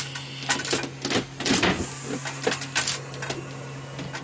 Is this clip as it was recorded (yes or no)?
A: yes